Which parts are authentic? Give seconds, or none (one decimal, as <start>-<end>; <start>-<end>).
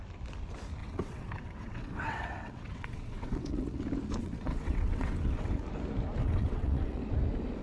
0.0-0.8; 3.8-4.2; 5.6-6.2; 7.0-7.6